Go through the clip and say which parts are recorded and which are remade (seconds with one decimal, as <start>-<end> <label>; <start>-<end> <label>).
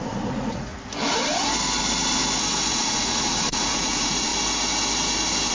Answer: 0.0-0.7 remade; 0.7-2.7 recorded; 2.7-4.3 remade; 4.3-5.5 recorded